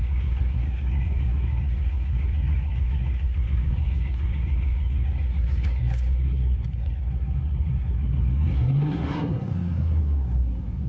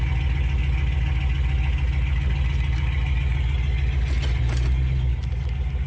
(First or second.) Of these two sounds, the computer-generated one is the first